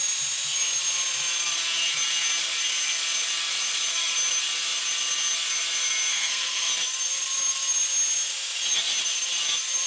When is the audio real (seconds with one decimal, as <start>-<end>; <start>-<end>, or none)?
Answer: 0.0-6.1; 6.7-9.9